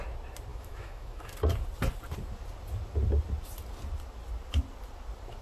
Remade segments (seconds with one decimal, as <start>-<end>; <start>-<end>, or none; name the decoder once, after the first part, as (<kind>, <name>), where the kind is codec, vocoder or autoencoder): 0.5-1.3 (autoencoder, DAC-VAE)